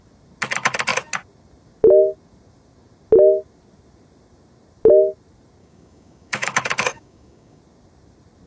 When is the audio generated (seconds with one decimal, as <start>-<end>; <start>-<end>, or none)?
5.6-7.6